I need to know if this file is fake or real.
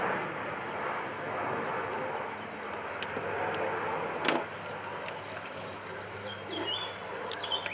real